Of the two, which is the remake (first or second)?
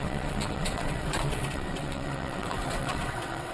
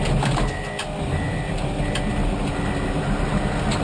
first